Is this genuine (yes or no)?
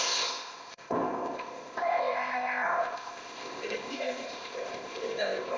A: no